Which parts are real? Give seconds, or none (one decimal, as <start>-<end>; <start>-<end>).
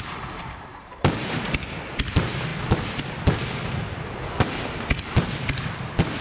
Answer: 0.0-6.2